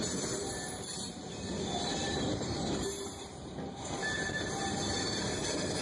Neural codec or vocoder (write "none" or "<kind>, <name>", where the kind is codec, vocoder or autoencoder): vocoder, BigVGAN v2